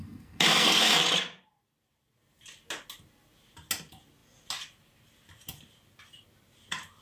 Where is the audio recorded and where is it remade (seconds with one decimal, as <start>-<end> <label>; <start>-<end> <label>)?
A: 0.0-1.0 remade; 1.0-7.0 recorded